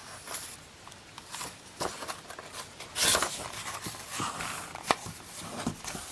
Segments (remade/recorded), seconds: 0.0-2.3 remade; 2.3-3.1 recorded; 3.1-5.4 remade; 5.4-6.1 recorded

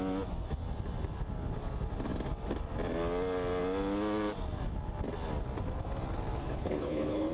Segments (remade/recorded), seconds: 0.0-6.4 recorded; 6.4-7.3 remade